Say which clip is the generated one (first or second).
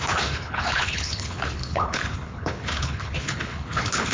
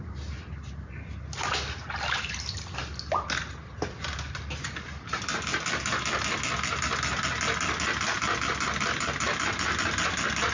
first